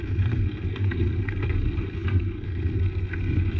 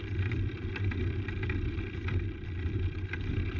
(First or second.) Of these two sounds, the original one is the second